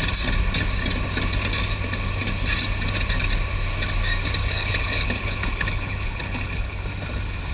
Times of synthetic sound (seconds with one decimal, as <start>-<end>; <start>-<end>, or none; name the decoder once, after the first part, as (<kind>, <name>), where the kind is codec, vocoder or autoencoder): 4.4-6.8 (codec, HILCodec)